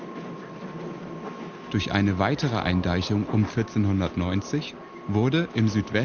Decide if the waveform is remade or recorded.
recorded